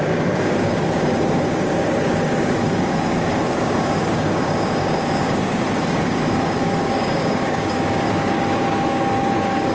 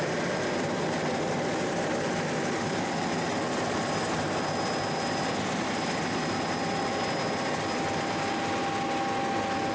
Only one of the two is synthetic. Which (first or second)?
first